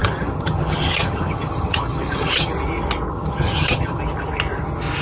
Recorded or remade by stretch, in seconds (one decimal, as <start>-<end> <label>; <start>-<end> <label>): 0.0-2.5 remade; 2.5-3.1 recorded; 3.1-4.0 remade; 4.0-5.0 recorded